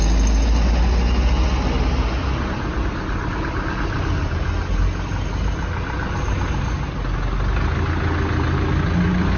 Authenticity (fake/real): real